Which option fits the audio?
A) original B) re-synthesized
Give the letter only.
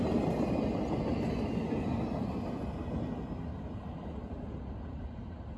A